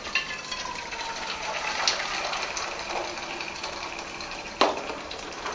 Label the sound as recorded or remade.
recorded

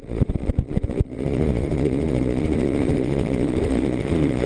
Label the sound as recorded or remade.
remade